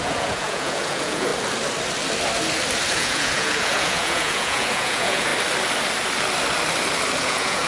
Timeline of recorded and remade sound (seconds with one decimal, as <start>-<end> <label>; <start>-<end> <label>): 0.0-1.3 remade; 1.3-2.9 recorded; 2.9-5.3 remade; 5.3-7.2 recorded; 7.2-7.7 remade